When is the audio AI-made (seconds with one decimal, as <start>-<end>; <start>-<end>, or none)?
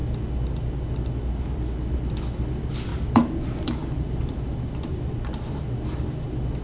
2.9-5.1